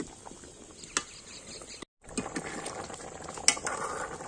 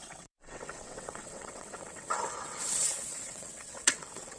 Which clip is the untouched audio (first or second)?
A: first